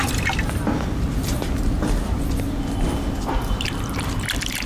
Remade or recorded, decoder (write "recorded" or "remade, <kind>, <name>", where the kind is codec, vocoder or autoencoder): recorded